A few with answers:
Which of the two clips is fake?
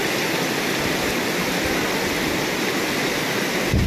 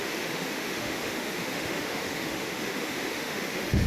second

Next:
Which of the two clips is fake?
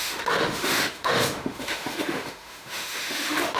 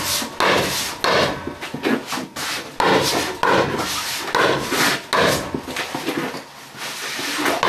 first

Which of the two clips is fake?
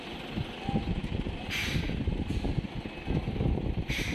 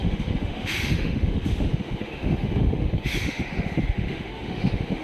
second